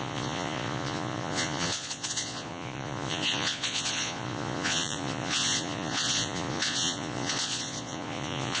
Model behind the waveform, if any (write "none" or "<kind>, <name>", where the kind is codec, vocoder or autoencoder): vocoder, Vocos